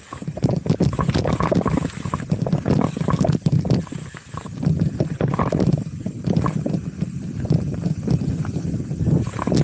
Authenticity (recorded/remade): recorded